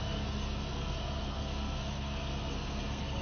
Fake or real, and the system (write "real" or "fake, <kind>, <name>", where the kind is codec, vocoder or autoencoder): fake, codec, SNAC